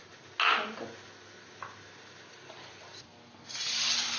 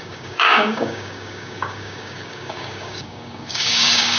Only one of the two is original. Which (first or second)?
first